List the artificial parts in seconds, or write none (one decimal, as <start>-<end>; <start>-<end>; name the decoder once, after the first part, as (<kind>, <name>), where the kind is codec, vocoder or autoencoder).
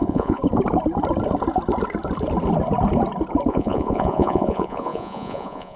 0.0-0.4 (vocoder, Vocos); 3.5-5.8